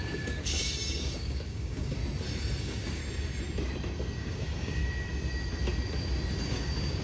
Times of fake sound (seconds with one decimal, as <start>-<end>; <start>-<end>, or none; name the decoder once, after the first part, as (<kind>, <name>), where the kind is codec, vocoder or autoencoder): 0.0-2.0 (codec, DAC); 2.6-3.0; 4.2-4.8; 6.4-7.0